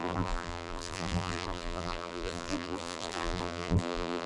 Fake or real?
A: fake